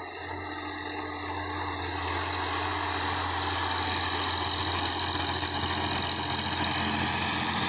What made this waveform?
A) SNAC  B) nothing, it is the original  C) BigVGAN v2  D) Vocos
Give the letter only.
B